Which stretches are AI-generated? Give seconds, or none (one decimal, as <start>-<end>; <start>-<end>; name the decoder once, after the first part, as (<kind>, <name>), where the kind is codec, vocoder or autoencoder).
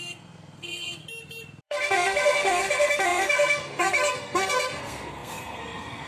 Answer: 0.0-1.0 (codec, SNAC); 1.6-6.1